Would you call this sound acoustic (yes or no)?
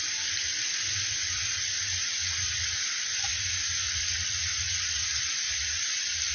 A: yes